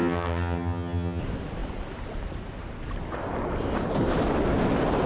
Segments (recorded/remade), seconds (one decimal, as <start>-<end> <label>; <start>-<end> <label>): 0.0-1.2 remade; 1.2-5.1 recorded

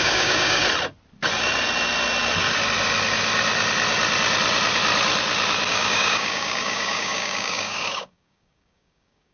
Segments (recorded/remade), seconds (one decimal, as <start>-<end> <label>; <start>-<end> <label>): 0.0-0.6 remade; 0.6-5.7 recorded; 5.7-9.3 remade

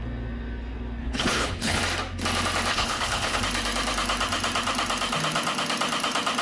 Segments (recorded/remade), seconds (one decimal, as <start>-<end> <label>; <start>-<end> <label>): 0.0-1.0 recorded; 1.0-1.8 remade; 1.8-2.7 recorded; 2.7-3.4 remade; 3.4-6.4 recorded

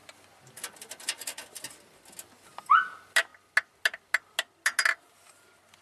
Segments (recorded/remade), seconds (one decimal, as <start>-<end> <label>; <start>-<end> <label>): 0.0-5.8 recorded